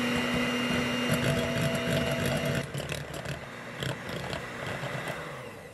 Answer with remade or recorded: recorded